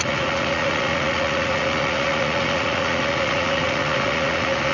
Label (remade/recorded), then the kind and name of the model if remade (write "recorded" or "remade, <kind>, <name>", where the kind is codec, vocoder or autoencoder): remade, vocoder, Vocos